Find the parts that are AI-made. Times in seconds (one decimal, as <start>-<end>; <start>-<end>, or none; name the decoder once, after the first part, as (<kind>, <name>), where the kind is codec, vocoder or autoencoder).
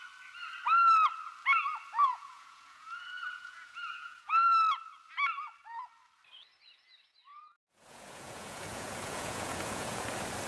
2.0-4.3 (vocoder, Vocos); 7.3-10.0